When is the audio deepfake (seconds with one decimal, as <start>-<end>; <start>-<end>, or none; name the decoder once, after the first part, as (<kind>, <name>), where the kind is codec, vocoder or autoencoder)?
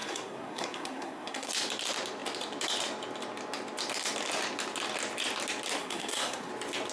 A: 0.0-1.5 (codec, SNAC); 5.8-6.5